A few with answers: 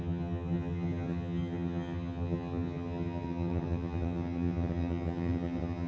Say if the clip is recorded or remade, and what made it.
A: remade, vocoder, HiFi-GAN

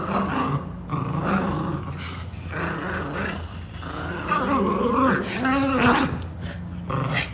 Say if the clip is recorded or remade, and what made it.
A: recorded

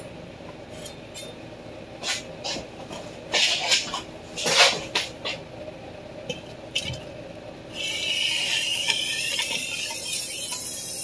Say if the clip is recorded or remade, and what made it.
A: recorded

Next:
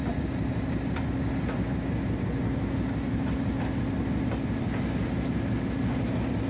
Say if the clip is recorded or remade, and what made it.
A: recorded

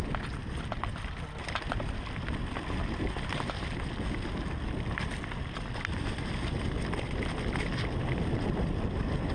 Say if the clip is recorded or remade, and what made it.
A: recorded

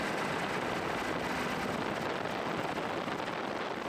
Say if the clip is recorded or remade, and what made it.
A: recorded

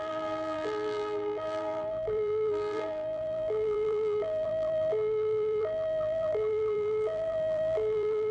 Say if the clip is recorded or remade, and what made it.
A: remade, vocoder, BigVGAN v2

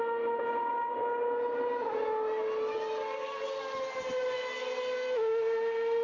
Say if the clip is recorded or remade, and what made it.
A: recorded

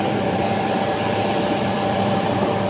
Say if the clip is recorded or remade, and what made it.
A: remade, vocoder, BigVGAN v2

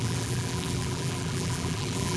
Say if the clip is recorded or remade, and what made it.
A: remade, vocoder, BigVGAN v2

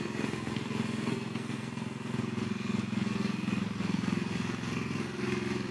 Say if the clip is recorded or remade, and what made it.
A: remade, codec, SNAC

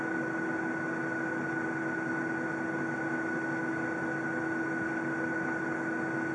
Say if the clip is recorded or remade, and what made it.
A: recorded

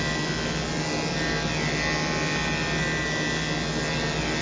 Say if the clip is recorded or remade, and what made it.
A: recorded